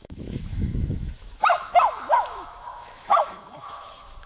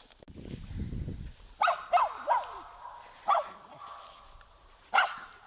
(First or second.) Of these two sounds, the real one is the second